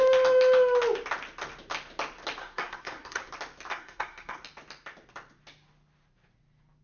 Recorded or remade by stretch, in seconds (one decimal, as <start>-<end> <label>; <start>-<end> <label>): 0.0-2.4 recorded; 2.4-3.3 remade; 3.3-3.7 recorded; 3.7-4.4 remade; 4.4-6.8 recorded

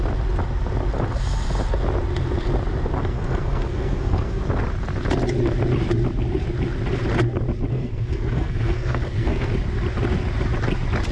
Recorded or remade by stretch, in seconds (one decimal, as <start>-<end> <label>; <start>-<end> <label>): 0.0-3.0 recorded; 3.0-4.4 remade; 4.4-7.7 recorded; 7.7-9.5 remade; 9.5-11.1 recorded